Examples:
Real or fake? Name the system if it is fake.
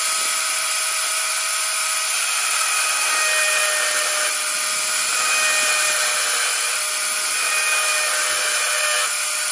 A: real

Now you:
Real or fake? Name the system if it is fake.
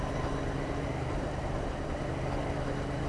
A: real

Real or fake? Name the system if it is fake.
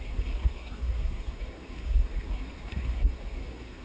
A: fake, codec, SNAC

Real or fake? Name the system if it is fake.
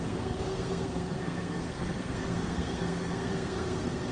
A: fake, codec, SNAC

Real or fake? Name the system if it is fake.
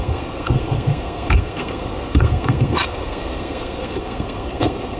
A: fake, codec, SNAC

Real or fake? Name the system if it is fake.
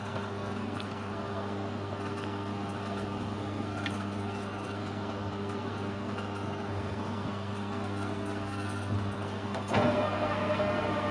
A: fake, codec, SNAC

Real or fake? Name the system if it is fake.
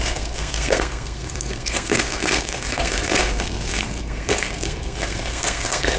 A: fake, codec, SNAC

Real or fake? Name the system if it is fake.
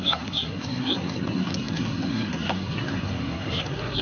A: fake, codec, SNAC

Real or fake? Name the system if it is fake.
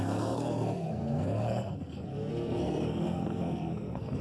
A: fake, codec, SNAC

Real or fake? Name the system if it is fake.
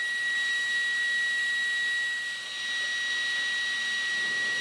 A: real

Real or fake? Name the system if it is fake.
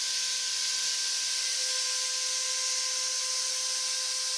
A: real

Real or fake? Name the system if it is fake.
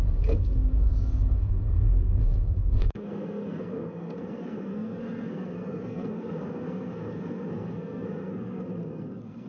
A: fake, codec, SNAC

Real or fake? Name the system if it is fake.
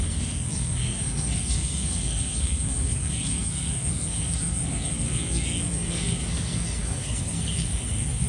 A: fake, codec, SNAC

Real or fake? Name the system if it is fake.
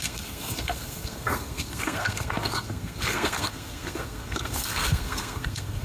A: fake, codec, SNAC